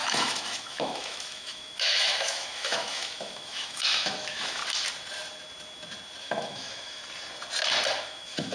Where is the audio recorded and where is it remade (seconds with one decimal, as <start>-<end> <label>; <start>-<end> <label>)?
0.0-4.6 remade; 4.6-6.2 recorded; 6.2-7.0 remade; 7.0-8.0 recorded; 8.0-8.5 remade